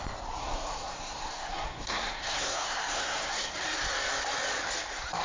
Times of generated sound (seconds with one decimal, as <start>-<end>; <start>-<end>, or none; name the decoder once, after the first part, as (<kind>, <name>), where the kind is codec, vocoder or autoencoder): 0.4-3.5 (codec, SNAC)